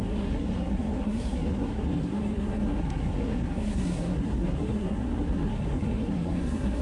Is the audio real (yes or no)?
no